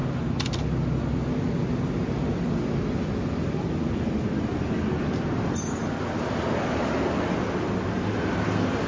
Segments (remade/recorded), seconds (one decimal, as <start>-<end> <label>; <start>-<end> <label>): 0.0-8.9 recorded